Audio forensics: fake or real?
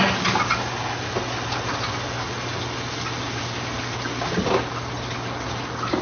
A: real